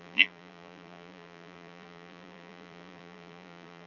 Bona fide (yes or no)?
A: no